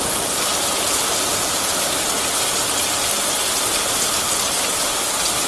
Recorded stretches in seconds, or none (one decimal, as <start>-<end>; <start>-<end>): 0.0-5.5